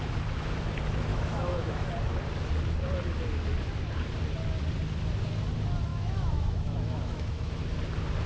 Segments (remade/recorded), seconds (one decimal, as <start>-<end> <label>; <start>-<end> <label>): 0.0-1.1 recorded; 1.1-1.9 remade; 1.9-5.9 recorded; 5.9-7.6 remade; 7.6-8.3 recorded